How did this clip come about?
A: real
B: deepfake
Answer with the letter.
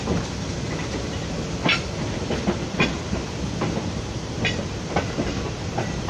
A